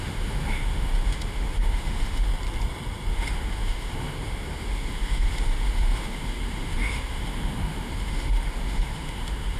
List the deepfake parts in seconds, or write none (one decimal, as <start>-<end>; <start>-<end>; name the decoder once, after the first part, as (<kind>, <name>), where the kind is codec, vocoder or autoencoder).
0.0-2.3 (autoencoder, DAC-VAE); 3.1-9.6